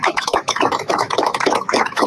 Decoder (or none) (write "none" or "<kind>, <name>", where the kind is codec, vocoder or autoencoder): autoencoder, DAC-VAE